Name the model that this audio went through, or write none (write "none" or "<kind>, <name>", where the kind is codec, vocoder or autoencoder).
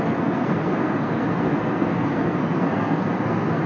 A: codec, SNAC